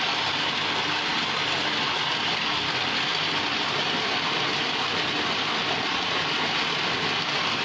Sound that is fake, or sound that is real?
real